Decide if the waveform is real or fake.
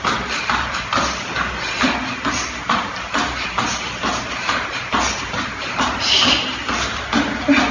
real